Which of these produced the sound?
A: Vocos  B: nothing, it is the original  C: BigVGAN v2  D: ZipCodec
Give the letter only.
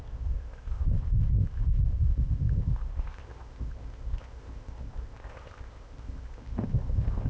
D